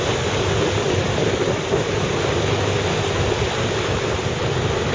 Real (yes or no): yes